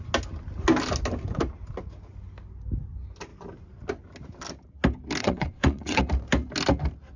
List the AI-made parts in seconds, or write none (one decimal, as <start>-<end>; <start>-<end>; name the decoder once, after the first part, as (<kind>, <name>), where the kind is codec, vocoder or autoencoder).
5.2-6.0 (vocoder, WaveNeXt)